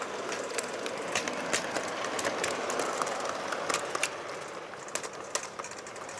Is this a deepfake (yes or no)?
no